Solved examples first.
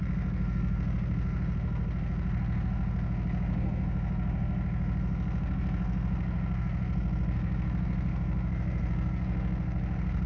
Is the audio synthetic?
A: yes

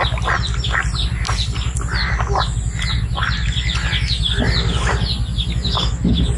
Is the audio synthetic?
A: no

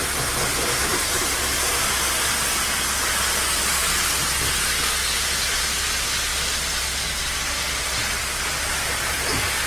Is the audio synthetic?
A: no